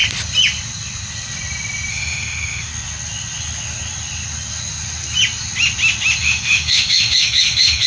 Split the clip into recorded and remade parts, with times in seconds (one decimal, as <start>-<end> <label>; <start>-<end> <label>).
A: 0.0-1.9 recorded; 1.9-2.7 remade; 2.7-6.2 recorded; 6.2-7.9 remade